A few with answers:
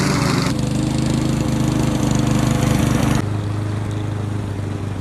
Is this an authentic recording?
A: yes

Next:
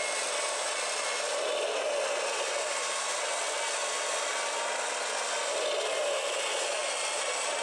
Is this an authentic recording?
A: yes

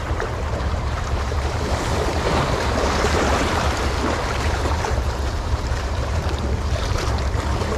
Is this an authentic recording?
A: no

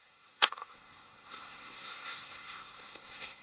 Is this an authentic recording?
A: no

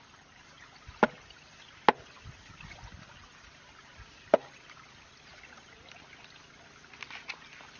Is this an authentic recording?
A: yes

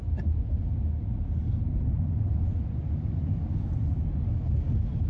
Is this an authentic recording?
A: yes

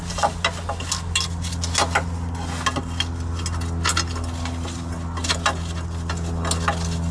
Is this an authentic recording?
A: yes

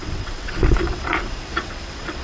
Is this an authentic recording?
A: no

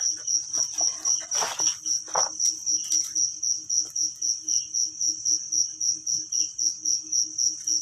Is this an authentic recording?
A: yes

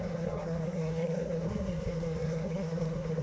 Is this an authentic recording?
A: no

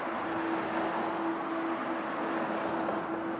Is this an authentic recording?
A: yes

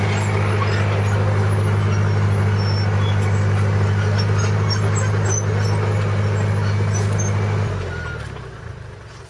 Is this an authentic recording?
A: yes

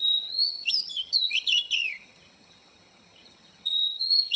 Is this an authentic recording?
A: no